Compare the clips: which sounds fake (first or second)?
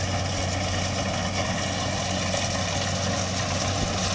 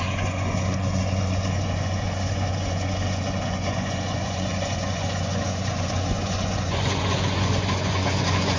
second